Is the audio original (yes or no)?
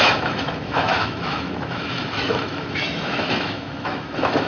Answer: no